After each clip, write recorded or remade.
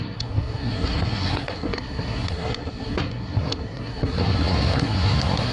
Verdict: remade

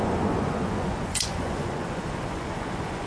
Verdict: remade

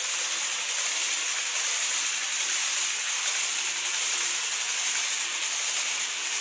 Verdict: recorded